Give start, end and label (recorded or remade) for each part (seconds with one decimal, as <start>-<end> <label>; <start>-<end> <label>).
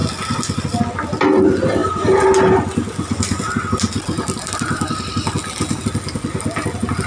0.0-7.1 recorded